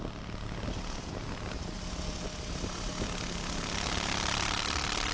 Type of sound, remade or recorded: recorded